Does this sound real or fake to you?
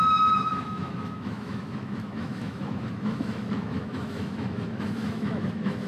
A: fake